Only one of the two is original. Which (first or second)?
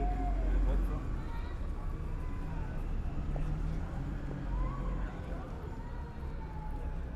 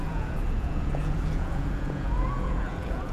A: first